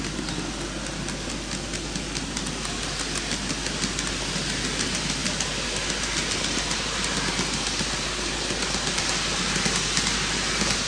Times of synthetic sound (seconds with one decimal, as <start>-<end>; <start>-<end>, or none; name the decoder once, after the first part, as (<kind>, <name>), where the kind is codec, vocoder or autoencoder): none